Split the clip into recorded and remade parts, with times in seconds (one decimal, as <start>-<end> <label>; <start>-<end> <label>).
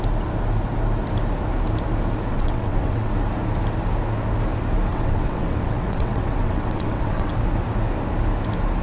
0.0-2.3 recorded; 2.3-3.1 remade; 3.1-4.9 recorded; 4.9-7.3 remade; 7.3-8.8 recorded